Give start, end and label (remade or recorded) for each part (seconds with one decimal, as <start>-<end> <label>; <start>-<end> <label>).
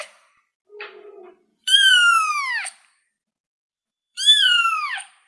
0.0-1.5 recorded; 1.5-2.3 remade; 2.3-3.7 recorded; 3.7-5.3 remade